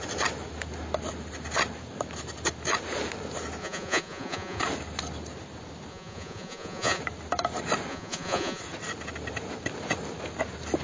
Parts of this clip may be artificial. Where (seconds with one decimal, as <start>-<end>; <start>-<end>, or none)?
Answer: 3.6-4.6; 5.9-7.0; 7.9-8.6